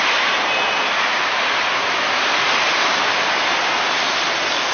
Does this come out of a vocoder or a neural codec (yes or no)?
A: no